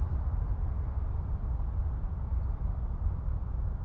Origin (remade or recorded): recorded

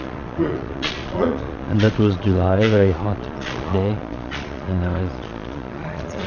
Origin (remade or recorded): remade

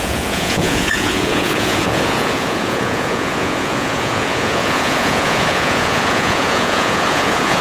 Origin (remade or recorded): remade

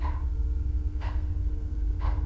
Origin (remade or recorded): remade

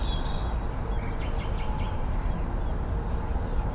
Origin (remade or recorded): recorded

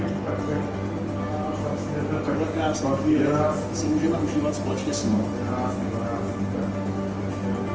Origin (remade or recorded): recorded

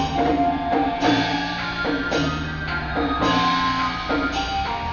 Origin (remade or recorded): recorded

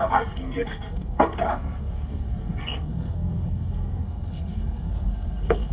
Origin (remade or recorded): remade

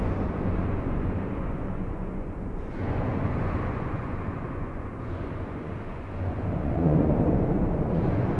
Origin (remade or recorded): remade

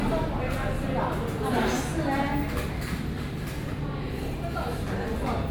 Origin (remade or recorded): recorded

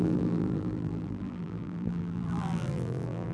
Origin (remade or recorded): remade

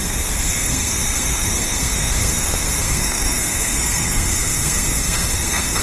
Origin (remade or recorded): remade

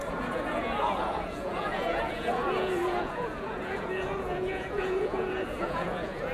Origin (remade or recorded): remade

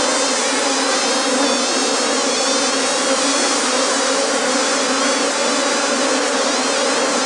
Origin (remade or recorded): recorded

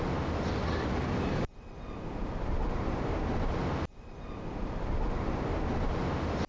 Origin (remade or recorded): recorded